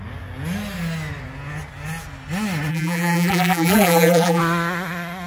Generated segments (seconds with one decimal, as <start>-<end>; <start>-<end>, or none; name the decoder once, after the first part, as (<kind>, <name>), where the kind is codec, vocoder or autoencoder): 2.7-4.4 (vocoder, BigVGAN v2)